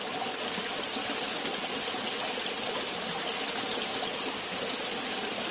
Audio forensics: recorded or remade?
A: recorded